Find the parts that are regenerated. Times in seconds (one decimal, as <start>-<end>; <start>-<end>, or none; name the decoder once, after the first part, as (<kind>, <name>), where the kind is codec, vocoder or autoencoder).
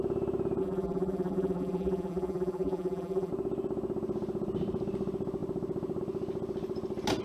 0.6-3.3 (vocoder, BigVGAN v2)